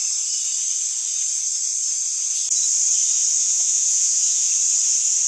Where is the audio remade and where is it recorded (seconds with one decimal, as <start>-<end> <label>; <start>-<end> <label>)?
0.0-3.4 recorded; 3.4-4.5 remade; 4.5-5.3 recorded